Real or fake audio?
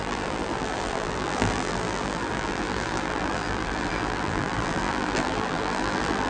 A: fake